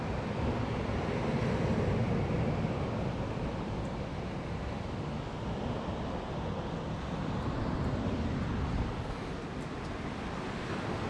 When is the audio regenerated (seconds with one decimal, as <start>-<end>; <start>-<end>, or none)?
none